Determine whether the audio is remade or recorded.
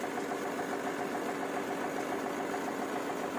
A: recorded